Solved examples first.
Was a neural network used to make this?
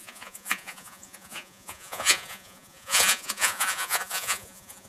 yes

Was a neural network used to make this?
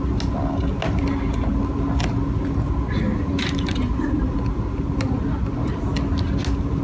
no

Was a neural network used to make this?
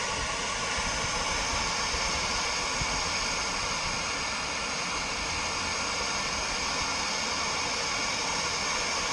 no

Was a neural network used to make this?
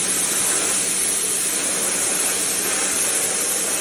no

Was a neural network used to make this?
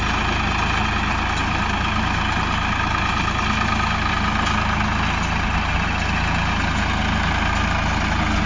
no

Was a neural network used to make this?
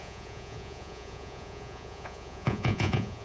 yes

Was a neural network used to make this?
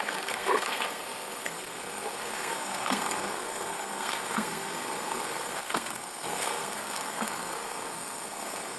yes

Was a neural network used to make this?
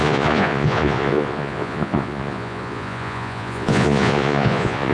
yes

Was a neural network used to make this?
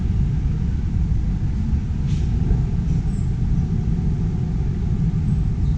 no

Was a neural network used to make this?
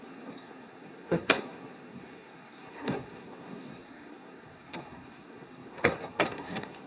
yes